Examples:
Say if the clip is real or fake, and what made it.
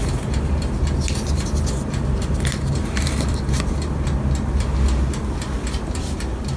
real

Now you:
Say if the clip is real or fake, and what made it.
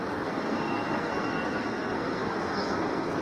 fake, codec, SNAC